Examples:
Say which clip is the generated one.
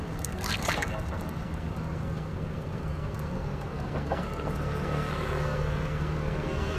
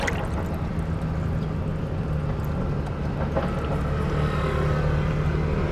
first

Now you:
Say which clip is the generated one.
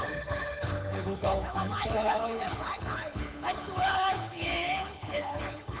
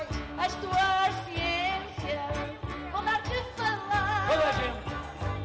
first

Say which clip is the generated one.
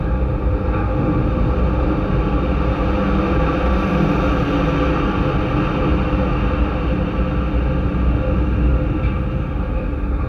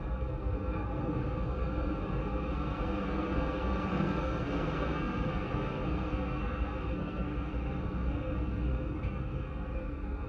second